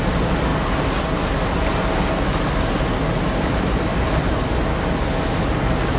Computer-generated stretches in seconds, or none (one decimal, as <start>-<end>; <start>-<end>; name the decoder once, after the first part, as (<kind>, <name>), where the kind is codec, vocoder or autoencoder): none

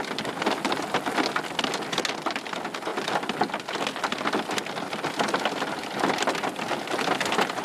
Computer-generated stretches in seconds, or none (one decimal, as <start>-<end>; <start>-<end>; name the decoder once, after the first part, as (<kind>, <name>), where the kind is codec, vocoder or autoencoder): none

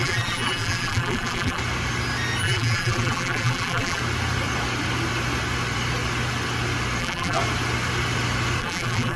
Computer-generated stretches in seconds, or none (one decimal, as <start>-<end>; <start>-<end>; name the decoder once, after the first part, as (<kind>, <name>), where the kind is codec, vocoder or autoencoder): 0.0-1.6 (vocoder, BigVGAN v2); 2.4-4.0; 7.0-7.4; 8.6-9.2

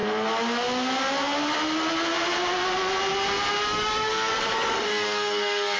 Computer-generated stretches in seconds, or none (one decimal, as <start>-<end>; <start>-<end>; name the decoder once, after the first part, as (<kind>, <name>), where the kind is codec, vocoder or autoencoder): 3.5-5.8 (codec, DAC)

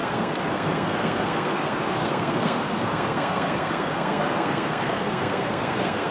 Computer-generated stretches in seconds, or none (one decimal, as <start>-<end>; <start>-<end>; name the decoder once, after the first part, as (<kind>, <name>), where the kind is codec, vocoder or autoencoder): 0.0-6.1 (codec, SNAC)